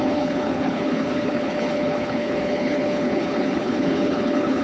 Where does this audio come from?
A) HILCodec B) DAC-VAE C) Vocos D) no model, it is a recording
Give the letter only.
A